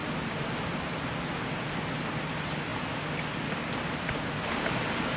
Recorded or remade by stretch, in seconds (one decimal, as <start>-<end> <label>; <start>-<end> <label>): 0.0-5.2 recorded